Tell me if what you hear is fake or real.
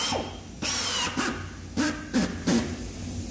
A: real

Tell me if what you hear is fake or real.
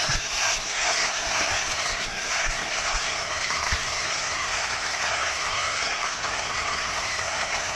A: fake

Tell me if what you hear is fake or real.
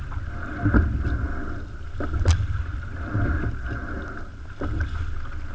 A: real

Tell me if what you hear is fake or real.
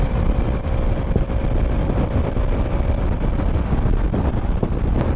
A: real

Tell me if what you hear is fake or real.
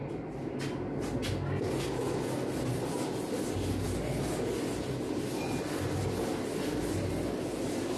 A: real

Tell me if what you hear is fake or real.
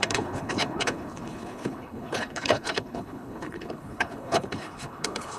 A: fake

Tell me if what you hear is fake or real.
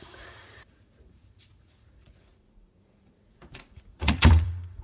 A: fake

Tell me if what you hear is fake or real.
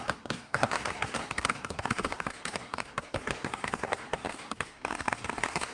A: fake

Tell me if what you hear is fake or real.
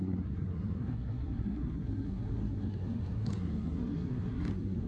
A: fake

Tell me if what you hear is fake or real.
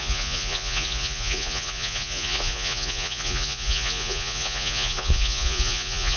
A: fake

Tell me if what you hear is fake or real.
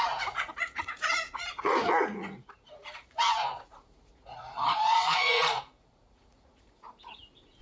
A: fake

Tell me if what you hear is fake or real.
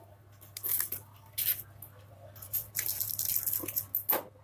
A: real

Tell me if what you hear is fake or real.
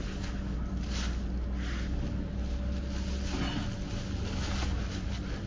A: real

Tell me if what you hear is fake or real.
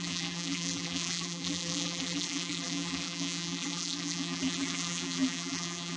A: fake